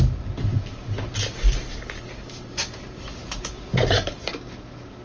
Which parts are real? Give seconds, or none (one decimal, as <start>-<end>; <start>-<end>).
0.0-1.3; 4.3-5.0